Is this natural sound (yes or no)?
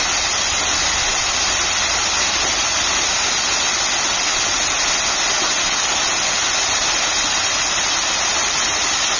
yes